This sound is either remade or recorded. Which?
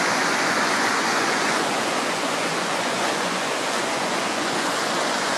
remade